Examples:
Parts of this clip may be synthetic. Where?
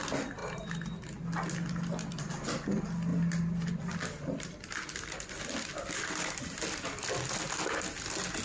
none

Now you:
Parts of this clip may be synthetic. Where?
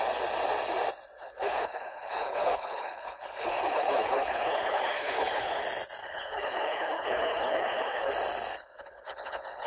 1.2-5.6 (codec, HILCodec); 6.0-8.1; 8.5-9.7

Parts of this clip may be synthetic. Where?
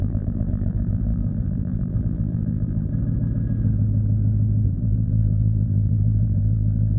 0.0-2.9 (vocoder, BigVGAN v2); 4.7-7.0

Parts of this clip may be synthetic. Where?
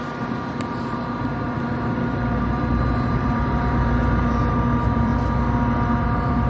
0.0-5.1 (vocoder, BigVGAN v2); 6.0-6.5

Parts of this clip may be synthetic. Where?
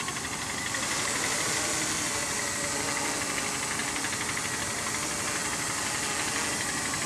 none